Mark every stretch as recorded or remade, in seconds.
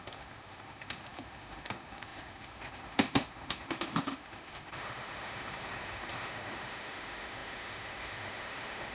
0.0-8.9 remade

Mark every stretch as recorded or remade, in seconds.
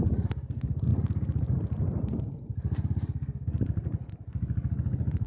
0.0-5.3 recorded